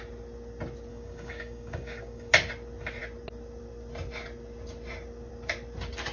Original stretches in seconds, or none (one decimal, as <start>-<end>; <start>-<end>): 0.0-0.9; 2.3-6.1

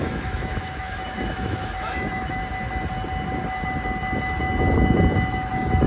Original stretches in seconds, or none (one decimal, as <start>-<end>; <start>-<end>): 2.4-5.3

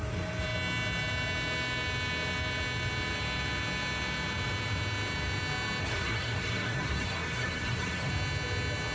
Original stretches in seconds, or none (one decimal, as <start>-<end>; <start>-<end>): 0.0-5.8; 8.1-8.9